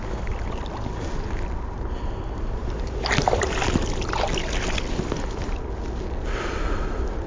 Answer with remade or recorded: recorded